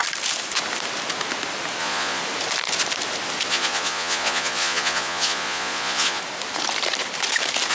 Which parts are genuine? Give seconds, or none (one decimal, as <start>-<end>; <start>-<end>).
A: 0.0-1.8; 2.2-3.5; 6.2-7.7